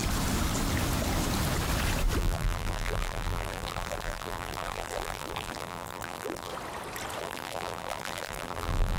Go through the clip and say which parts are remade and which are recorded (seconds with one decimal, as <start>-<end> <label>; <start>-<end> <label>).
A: 0.0-2.2 recorded; 2.2-6.5 remade; 6.5-7.2 recorded; 7.2-9.0 remade

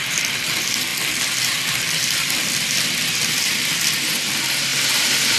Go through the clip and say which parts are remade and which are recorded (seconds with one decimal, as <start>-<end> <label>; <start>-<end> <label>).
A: 0.0-0.9 recorded; 0.9-3.7 remade; 3.7-4.7 recorded; 4.7-5.4 remade

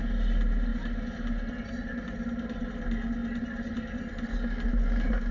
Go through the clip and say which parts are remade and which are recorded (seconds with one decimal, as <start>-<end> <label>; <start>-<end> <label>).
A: 0.0-5.3 recorded

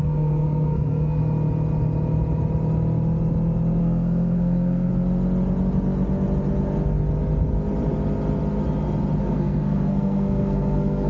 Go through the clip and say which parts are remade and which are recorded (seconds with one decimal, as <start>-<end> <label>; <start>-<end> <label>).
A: 0.0-1.2 remade; 1.2-3.8 recorded; 3.8-4.9 remade; 4.9-9.2 recorded; 9.2-11.1 remade

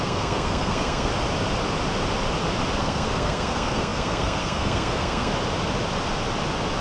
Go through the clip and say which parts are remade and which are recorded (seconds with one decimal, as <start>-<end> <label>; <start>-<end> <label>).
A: 0.0-1.1 remade; 1.1-2.8 recorded; 2.8-5.3 remade; 5.3-6.8 recorded

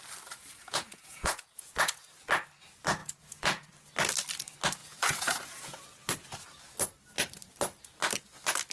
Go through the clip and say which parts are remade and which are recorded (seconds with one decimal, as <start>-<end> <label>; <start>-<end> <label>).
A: 0.0-0.4 recorded; 0.4-2.2 remade; 2.2-3.0 recorded; 3.0-3.7 remade; 3.7-4.8 recorded; 4.8-5.8 remade; 5.8-8.7 recorded

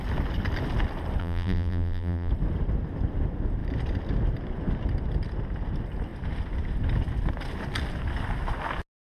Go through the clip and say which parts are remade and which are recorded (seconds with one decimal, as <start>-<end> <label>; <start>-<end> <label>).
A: 0.0-1.2 recorded; 1.2-2.3 remade; 2.3-9.0 recorded